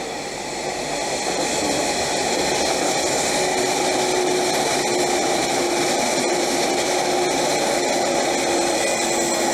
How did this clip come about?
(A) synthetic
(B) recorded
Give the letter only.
B